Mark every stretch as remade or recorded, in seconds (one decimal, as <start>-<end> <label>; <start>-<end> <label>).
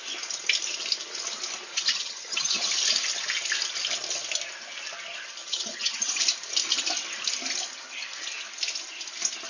0.0-1.7 recorded; 1.7-2.7 remade; 2.7-5.4 recorded; 5.4-6.2 remade; 6.2-9.5 recorded